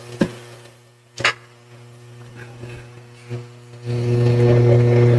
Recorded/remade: recorded